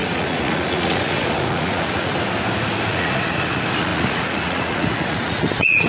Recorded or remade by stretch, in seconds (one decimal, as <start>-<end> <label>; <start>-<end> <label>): 0.0-2.1 remade; 2.1-2.9 recorded; 2.9-5.9 remade